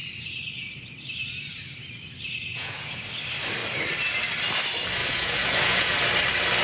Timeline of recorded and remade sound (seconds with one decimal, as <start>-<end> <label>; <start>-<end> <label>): 0.0-2.5 recorded; 2.5-3.0 remade; 3.0-5.0 recorded; 5.0-5.9 remade; 5.9-6.6 recorded